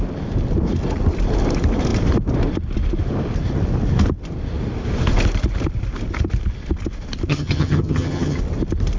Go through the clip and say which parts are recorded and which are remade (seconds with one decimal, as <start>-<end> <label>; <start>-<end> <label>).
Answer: 0.0-7.3 recorded; 7.3-8.4 remade; 8.4-9.0 recorded